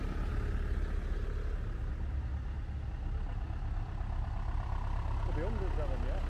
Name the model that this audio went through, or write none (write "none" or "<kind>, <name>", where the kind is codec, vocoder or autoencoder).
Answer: none